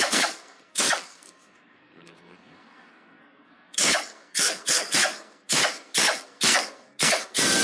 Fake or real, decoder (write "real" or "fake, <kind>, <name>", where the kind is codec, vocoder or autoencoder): fake, codec, SNAC